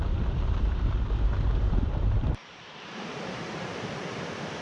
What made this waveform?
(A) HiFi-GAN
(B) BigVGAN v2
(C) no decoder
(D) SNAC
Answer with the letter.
B